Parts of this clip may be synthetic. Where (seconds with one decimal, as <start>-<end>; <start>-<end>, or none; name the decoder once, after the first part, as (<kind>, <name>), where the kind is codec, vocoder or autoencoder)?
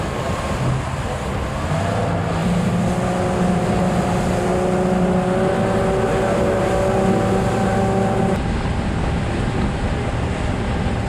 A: none